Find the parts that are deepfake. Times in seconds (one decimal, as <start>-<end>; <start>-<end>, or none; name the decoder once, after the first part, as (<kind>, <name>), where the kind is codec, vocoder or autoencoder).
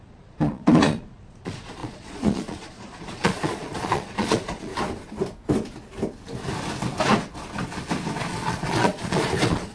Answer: 0.0-4.7 (vocoder, Vocos); 8.2-9.7